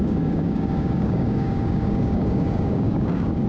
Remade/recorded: remade